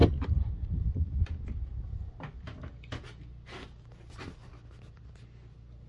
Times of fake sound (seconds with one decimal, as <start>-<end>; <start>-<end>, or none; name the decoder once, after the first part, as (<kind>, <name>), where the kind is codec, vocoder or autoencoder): none